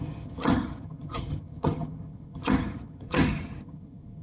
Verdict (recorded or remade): remade